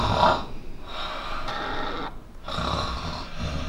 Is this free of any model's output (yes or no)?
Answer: yes